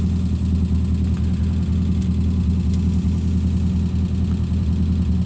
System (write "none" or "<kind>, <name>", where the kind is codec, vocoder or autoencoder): none